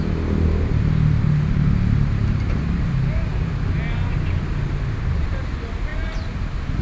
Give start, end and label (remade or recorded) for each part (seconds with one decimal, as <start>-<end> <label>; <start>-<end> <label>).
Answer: 0.0-6.8 recorded